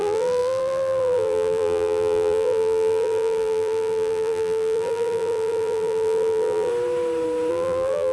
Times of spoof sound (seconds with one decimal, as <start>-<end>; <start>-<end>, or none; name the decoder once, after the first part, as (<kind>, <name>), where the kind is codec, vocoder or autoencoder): 0.0-6.7 (vocoder, BigVGAN v2); 7.5-8.1